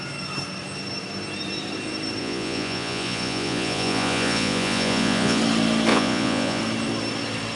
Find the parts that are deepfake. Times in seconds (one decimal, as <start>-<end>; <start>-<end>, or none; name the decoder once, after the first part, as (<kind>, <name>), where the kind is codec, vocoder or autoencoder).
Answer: 2.2-5.4 (vocoder, Vocos); 5.9-6.6